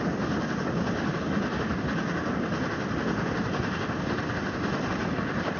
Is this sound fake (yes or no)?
no